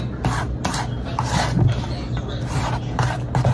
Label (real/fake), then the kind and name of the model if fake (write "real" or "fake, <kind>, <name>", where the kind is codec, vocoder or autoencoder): real